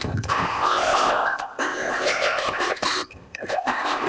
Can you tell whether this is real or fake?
fake